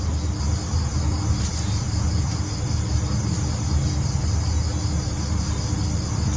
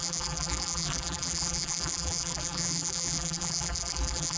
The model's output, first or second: second